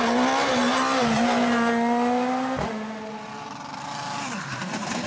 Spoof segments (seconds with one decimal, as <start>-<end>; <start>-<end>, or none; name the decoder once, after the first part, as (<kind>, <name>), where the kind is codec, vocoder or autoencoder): none